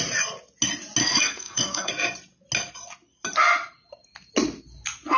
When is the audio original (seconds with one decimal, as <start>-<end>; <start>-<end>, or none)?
0.0-1.0; 1.9-5.2